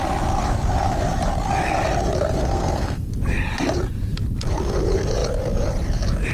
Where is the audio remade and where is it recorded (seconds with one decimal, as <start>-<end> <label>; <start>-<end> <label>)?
0.0-2.4 recorded; 2.4-3.1 remade; 3.1-6.3 recorded